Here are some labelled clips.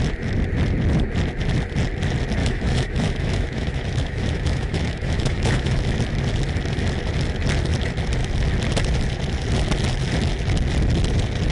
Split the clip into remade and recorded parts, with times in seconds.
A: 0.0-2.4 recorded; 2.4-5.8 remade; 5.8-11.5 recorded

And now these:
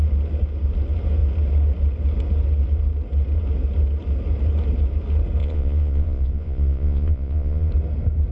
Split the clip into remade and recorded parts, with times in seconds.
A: 0.0-5.4 recorded; 5.4-7.7 remade; 7.7-8.3 recorded

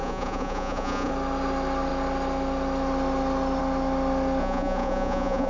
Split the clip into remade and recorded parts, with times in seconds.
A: 0.0-1.1 remade; 1.1-4.4 recorded; 4.4-5.5 remade

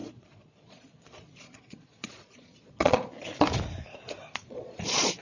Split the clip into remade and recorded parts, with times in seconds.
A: 0.0-3.1 remade; 3.1-4.2 recorded; 4.2-5.2 remade

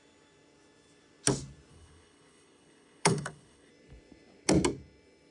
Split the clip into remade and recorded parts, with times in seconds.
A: 0.0-1.7 recorded; 1.7-3.7 remade; 3.7-5.3 recorded